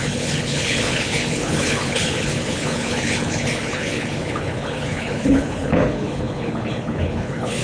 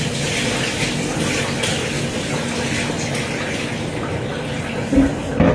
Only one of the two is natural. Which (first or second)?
second